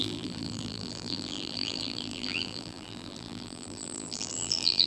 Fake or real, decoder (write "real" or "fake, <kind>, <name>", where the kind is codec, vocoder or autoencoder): fake, vocoder, BigVGAN v2